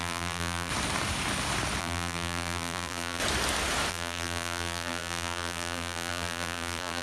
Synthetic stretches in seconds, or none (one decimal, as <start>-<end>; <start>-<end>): 0.0-0.7; 1.8-3.2; 3.9-7.0